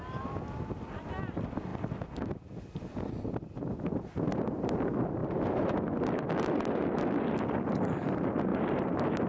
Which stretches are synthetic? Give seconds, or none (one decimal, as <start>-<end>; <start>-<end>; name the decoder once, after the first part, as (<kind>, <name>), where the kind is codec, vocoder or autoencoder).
none